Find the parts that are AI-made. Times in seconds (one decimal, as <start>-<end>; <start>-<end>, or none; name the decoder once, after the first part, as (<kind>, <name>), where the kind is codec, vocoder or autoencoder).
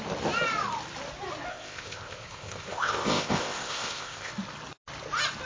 1.5-4.3 (codec, ZipCodec)